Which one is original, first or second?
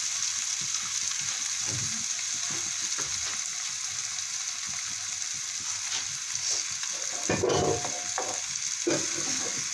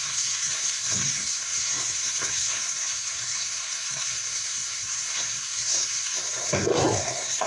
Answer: first